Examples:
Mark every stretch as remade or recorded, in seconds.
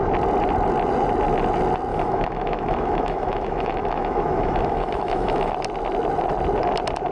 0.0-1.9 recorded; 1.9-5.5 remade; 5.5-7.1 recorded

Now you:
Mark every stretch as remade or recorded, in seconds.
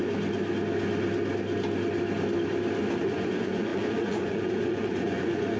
0.0-3.0 recorded; 3.0-5.6 remade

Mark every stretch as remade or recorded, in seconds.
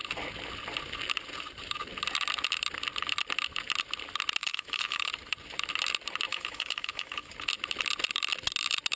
0.0-4.4 recorded; 4.4-5.1 remade; 5.1-6.3 recorded; 6.3-7.3 remade; 7.3-9.0 recorded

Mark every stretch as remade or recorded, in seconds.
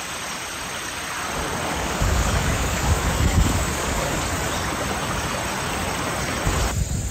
0.0-1.7 recorded; 1.7-4.2 remade; 4.2-7.1 recorded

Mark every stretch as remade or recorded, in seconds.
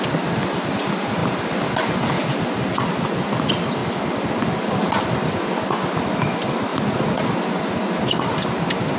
0.0-6.7 recorded; 6.7-7.2 remade; 7.2-9.0 recorded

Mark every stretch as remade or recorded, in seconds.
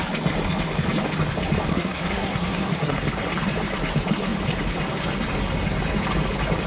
0.0-1.7 recorded; 1.7-2.9 remade; 2.9-6.7 recorded